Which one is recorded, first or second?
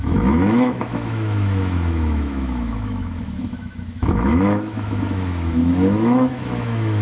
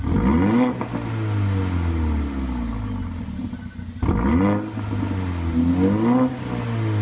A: second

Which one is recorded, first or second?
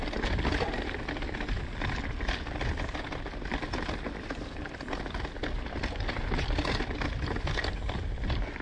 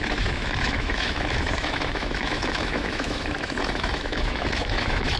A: first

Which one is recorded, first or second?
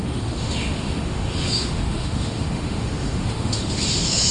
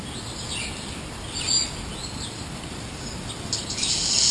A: second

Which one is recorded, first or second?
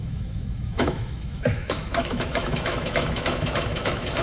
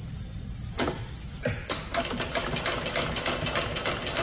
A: second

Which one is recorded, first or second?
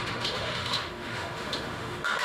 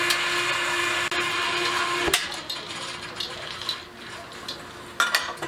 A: second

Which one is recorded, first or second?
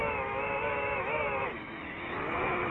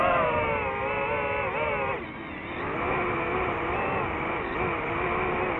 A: second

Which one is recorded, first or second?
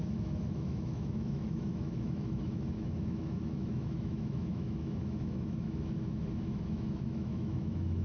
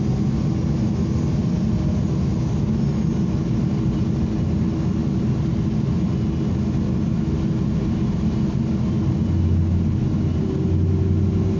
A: second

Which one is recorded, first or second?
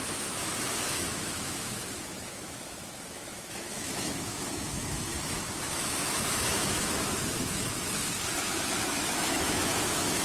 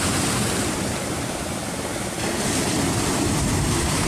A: second